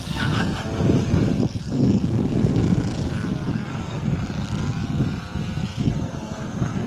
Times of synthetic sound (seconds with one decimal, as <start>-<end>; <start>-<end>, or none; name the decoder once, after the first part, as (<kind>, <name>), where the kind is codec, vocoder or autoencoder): 0.0-0.5 (codec, SNAC); 1.6-2.6; 3.5-4.1; 5.8-6.9